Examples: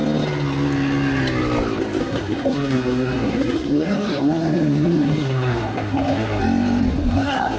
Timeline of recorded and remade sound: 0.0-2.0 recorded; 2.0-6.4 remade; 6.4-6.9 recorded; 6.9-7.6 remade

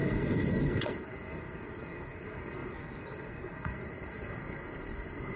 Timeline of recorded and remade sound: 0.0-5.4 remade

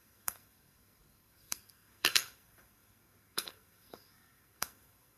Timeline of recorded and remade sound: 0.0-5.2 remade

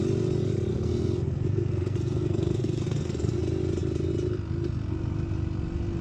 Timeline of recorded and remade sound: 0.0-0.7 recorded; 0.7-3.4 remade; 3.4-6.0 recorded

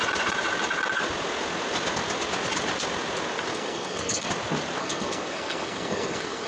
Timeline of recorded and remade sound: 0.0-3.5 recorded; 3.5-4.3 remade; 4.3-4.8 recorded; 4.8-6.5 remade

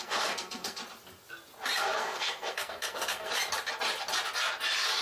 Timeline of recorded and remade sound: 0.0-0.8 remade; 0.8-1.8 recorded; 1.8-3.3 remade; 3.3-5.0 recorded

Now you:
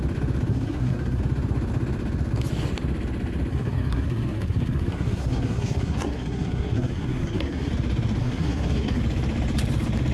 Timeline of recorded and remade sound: 0.0-0.5 recorded; 0.5-1.2 remade; 1.2-3.5 recorded; 3.5-7.7 remade; 7.7-8.2 recorded; 8.2-9.0 remade; 9.0-10.1 recorded